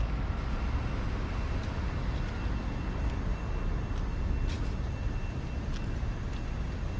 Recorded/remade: recorded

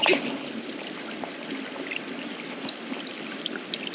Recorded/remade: recorded